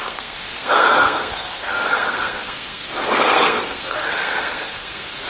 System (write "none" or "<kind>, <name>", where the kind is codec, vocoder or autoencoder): codec, SNAC